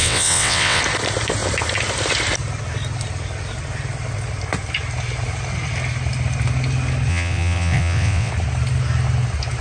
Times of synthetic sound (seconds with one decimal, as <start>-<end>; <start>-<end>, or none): 0.0-0.8; 7.1-8.3